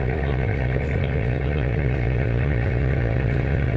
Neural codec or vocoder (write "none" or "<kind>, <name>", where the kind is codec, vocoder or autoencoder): vocoder, Vocos